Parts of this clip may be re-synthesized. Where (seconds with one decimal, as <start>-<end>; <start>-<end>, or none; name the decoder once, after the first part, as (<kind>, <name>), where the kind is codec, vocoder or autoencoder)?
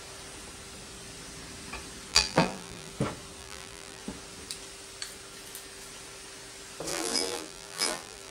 2.1-2.9 (vocoder, BigVGAN v2); 3.4-4.0; 6.9-8.3